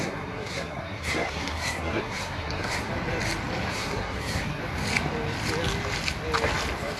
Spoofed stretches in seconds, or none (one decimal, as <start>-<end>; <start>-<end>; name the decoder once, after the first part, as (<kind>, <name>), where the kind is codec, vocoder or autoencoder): 0.0-2.9 (codec, SNAC); 3.7-4.6

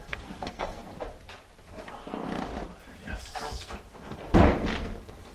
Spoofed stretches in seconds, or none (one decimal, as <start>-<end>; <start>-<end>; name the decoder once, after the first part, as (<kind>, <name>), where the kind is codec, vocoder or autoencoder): 0.0-0.9 (codec, SNAC); 1.6-2.5; 3.2-5.3